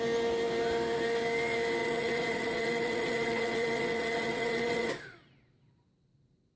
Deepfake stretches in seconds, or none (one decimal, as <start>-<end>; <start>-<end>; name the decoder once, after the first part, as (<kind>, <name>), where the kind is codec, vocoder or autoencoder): 1.8-4.9 (vocoder, WaveNeXt)